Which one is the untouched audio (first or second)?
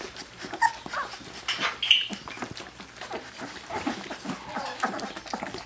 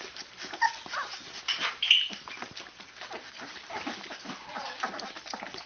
first